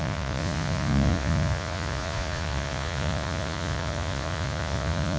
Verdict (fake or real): fake